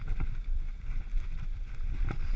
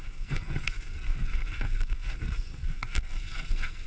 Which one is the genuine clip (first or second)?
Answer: first